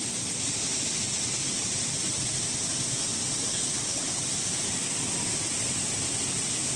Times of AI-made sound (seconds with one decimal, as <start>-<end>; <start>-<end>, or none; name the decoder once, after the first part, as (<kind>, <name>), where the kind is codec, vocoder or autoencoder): 3.5-4.2 (codec, HILCodec)